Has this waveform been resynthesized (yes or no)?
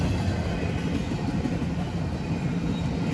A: no